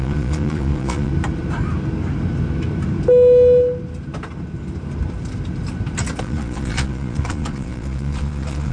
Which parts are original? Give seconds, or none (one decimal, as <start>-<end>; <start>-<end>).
1.1-6.2

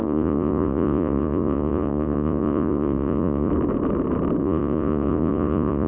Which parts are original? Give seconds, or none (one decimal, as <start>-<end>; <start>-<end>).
3.5-4.4

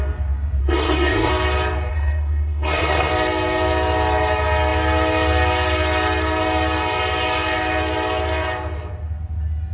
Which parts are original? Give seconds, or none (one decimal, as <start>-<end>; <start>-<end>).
0.0-0.6; 1.3-1.9; 3.1-9.7

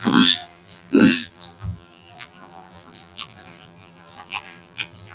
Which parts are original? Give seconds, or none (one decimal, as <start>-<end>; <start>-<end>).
none

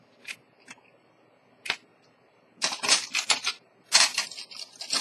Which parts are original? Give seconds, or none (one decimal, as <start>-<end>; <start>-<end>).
0.0-1.9; 3.7-5.0

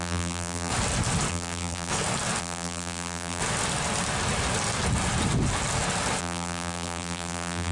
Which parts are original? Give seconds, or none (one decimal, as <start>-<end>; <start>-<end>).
0.7-1.3; 1.9-2.4; 3.4-6.2

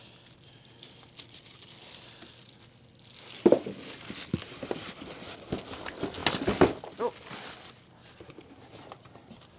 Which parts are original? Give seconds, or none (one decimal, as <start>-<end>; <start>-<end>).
0.0-9.6